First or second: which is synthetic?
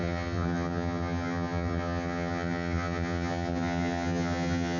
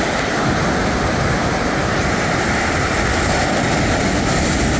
first